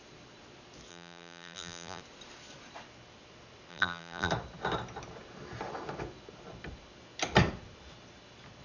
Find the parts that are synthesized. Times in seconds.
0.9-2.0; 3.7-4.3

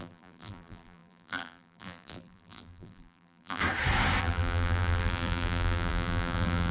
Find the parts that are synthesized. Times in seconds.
0.0-3.6; 4.2-6.7

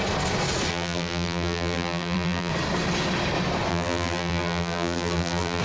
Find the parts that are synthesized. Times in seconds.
0.7-2.5; 3.7-5.6

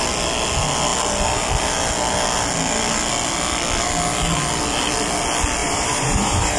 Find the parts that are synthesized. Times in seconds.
5.6-6.6

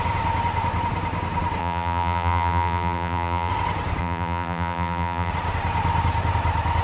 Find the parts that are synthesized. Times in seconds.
1.6-3.5; 4.0-5.3

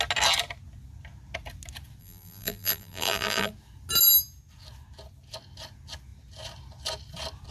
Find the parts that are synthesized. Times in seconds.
2.0-3.5

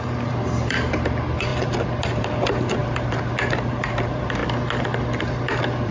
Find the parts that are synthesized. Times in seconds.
0.0-4.4; 5.2-5.9

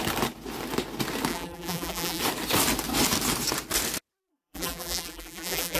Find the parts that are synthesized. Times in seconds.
1.3-2.2; 4.3-5.8